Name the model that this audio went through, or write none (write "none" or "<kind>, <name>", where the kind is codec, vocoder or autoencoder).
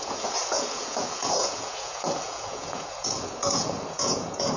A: vocoder, Vocos